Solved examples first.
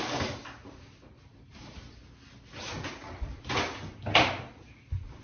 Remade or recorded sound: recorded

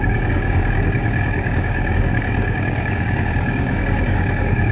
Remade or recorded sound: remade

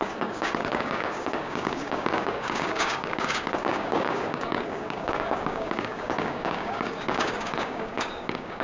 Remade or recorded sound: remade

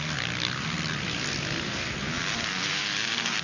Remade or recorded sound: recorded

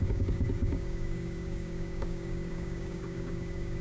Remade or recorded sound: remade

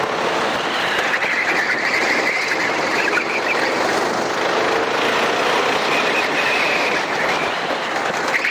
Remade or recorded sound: recorded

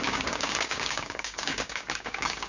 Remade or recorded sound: remade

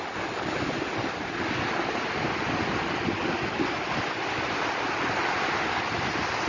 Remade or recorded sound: recorded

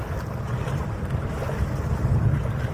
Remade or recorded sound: recorded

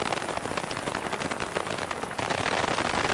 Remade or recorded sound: recorded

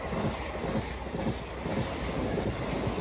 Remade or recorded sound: recorded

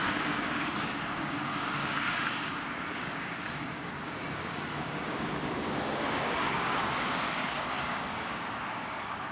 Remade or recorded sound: remade